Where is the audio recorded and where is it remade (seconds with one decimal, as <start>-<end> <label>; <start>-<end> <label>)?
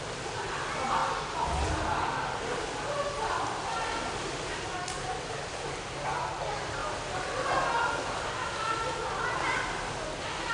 0.0-10.5 recorded